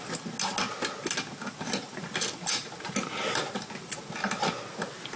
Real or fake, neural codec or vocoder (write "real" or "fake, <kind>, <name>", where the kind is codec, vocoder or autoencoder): real